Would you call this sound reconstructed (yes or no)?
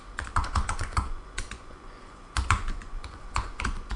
yes